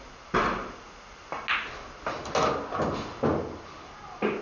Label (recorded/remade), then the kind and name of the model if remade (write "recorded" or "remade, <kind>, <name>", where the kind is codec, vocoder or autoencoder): recorded